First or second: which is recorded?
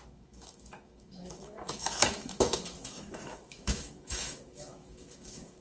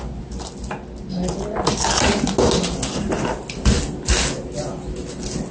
second